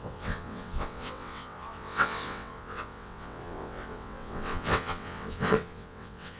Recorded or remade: remade